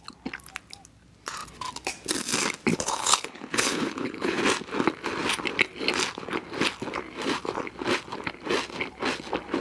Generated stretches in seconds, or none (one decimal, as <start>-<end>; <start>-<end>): 2.7-4.4